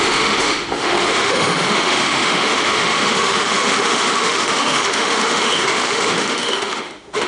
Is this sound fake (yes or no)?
yes